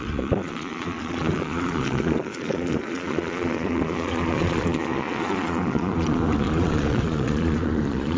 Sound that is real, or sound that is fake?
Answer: fake